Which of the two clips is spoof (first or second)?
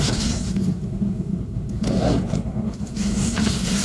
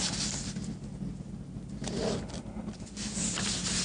first